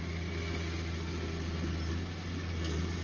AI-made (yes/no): no